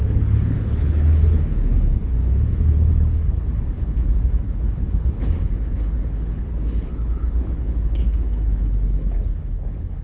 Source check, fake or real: fake